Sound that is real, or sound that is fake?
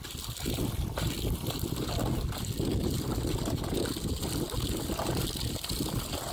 real